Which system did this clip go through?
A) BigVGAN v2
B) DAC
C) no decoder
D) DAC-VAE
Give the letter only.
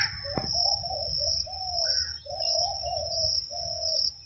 C